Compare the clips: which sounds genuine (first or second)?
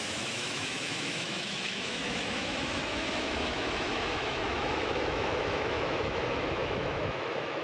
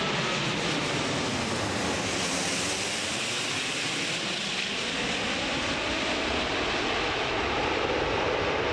second